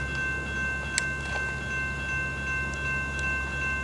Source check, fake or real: real